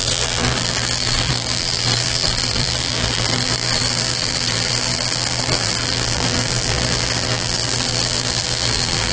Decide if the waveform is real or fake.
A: fake